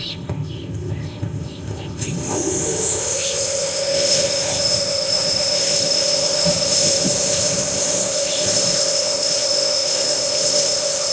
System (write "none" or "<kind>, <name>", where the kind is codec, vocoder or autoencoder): codec, ZipCodec